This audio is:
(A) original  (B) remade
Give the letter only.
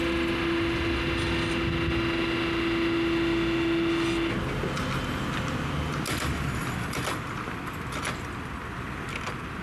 A